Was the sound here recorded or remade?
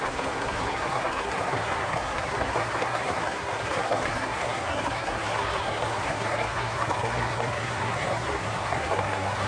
remade